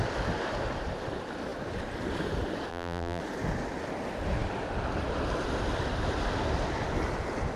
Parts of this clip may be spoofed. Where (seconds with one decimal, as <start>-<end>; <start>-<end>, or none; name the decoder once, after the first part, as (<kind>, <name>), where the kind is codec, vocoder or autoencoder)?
2.7-3.2 (vocoder, BigVGAN v2)